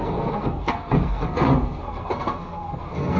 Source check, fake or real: fake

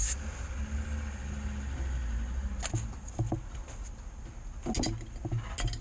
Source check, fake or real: real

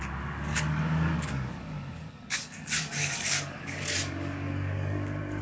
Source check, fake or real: fake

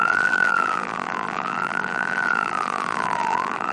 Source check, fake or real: fake